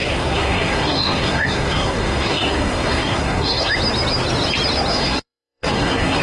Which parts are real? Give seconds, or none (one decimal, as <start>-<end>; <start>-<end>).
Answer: 3.7-4.9